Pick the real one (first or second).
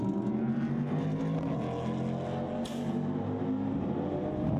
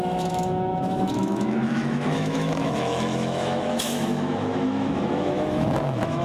first